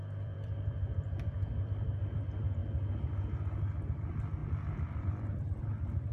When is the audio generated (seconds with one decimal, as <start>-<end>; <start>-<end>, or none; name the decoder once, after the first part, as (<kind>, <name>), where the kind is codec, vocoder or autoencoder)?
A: 0.0-2.6 (vocoder, BigVGAN v2); 3.9-6.1